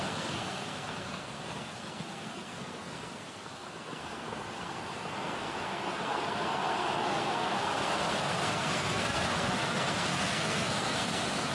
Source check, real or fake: fake